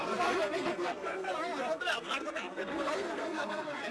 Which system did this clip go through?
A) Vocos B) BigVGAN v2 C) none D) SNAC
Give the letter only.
D